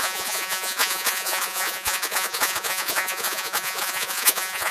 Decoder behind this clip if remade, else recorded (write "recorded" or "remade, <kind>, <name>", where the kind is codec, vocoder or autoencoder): remade, vocoder, Vocos